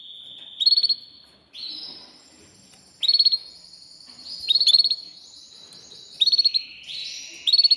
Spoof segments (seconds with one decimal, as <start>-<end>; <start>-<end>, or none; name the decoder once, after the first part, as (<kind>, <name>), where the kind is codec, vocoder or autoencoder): none